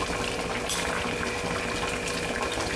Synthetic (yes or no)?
no